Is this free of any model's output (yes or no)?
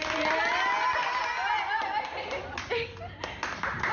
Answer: yes